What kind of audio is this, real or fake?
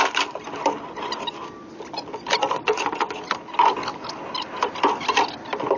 real